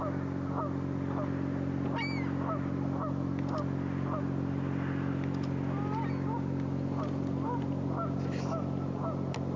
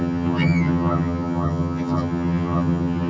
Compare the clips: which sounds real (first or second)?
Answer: first